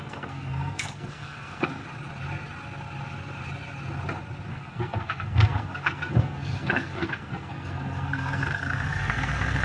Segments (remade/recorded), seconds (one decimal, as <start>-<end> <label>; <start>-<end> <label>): 0.0-1.8 remade; 1.8-4.5 recorded; 4.5-9.6 remade